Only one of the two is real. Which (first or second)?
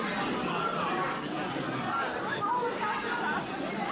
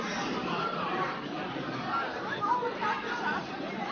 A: first